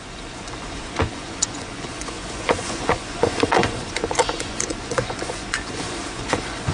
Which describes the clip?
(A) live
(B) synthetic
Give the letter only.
B